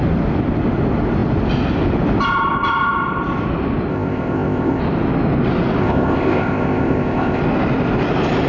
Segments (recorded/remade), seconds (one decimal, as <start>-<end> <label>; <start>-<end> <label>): 0.0-3.9 recorded; 3.9-4.8 remade; 4.8-5.8 recorded; 5.8-7.4 remade; 7.4-8.5 recorded